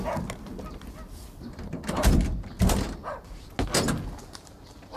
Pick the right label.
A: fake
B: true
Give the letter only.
B